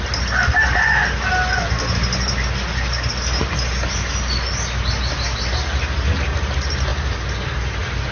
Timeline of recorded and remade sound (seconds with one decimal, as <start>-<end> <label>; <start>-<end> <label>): 0.0-8.1 recorded